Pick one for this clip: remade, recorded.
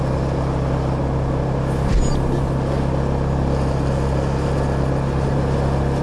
recorded